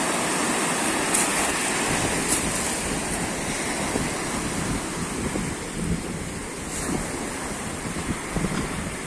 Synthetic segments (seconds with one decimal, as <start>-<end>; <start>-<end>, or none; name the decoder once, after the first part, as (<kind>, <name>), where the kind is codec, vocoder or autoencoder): none